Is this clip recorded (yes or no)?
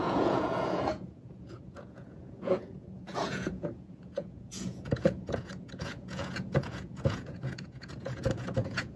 no